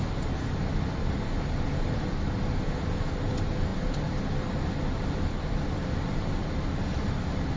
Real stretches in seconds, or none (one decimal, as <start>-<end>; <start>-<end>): 0.0-7.6